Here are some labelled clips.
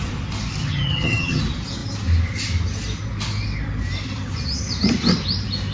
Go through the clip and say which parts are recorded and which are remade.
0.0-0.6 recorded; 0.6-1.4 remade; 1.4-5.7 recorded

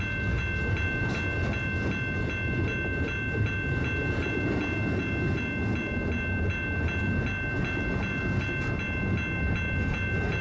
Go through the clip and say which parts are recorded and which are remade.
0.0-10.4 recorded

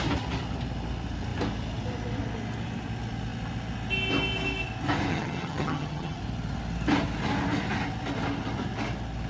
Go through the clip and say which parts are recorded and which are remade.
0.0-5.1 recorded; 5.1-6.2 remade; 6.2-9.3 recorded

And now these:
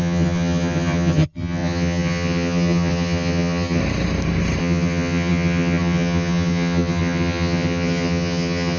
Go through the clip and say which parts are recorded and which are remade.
0.0-3.8 remade; 3.8-4.6 recorded; 4.6-8.8 remade